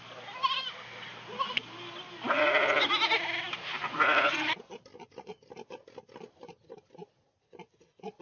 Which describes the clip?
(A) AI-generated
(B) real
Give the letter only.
B